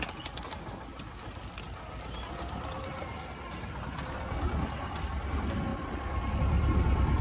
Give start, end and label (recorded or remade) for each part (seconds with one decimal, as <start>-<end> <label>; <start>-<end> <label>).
0.0-7.2 recorded